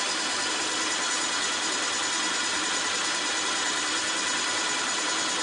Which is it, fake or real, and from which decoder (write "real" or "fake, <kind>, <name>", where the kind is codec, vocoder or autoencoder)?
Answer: real